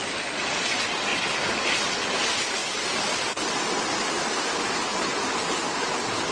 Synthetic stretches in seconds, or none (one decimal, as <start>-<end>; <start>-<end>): none